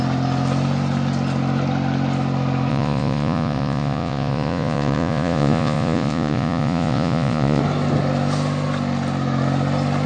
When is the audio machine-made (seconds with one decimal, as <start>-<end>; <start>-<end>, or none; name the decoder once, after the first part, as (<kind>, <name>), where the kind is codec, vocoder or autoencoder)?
2.7-7.6 (vocoder, Vocos)